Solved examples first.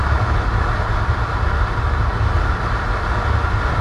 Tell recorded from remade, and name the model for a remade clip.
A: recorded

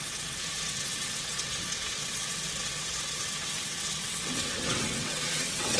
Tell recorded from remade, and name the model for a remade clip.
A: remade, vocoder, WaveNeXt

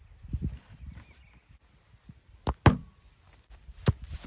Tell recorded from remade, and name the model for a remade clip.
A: recorded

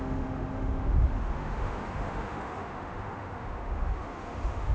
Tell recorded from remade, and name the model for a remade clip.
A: remade, autoencoder, DAC-VAE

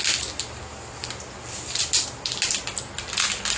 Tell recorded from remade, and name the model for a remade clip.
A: recorded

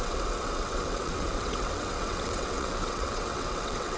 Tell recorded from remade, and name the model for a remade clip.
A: remade, vocoder, WaveNeXt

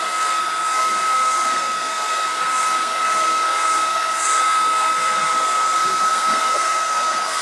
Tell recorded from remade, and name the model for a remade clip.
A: remade, codec, SNAC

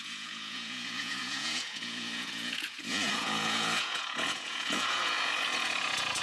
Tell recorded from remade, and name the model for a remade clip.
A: remade, vocoder, Vocos